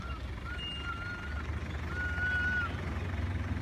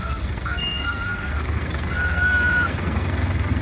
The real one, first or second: first